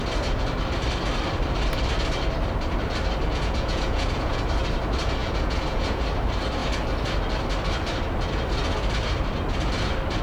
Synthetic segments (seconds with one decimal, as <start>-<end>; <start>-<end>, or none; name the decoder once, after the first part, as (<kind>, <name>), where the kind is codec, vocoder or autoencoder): 3.3-4.4 (vocoder, Vocos); 5.2-6.0